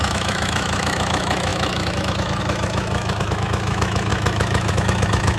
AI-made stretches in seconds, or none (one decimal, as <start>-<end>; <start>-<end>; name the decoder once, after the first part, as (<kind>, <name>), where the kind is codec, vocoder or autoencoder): 0.0-5.4 (autoencoder, DAC-VAE)

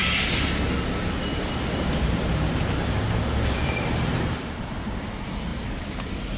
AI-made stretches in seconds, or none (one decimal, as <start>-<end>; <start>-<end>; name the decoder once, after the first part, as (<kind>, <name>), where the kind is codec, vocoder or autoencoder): 1.8-3.0 (vocoder, BigVGAN v2); 3.5-6.4

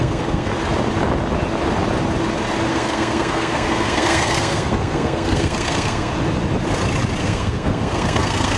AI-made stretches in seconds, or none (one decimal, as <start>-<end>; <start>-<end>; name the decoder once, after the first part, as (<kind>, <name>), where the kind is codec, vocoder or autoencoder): 0.0-0.5 (codec, SNAC); 2.7-6.1; 7.2-8.6

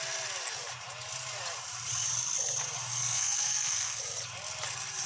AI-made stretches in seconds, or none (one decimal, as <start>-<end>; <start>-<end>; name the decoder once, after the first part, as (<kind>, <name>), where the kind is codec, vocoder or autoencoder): 2.9-4.0 (codec, SNAC)

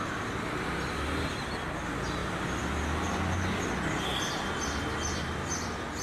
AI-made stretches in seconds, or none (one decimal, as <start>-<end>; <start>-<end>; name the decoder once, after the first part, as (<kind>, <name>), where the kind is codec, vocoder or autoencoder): none

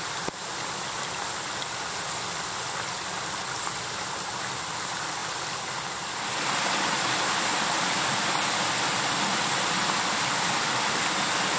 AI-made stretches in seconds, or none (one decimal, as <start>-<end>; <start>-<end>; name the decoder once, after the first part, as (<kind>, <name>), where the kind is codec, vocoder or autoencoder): none

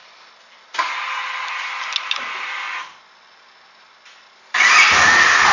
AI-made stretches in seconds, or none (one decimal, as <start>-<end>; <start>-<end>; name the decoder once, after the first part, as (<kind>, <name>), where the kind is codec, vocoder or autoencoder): none

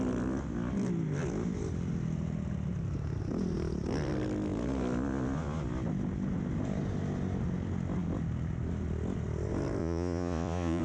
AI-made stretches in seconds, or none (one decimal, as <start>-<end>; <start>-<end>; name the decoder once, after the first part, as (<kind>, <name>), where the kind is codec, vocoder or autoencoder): 9.8-10.8 (vocoder, Vocos)